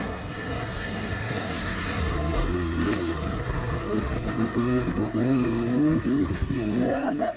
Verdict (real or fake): fake